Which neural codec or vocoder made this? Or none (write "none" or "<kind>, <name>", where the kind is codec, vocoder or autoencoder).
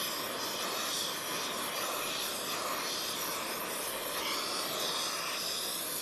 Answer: none